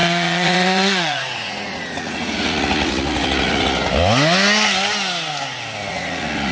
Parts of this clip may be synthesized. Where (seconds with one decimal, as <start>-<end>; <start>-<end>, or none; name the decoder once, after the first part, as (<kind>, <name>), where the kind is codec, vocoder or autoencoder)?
0.0-3.9 (vocoder, Vocos); 5.9-6.5